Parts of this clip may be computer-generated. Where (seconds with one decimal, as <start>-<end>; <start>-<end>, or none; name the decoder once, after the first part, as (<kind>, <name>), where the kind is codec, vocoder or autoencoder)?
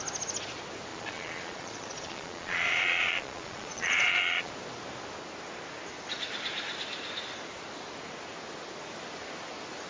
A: 0.9-4.5 (vocoder, Vocos)